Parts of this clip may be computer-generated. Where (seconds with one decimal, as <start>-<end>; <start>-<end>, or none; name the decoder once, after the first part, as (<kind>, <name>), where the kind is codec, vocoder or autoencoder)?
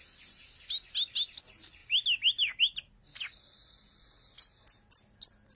none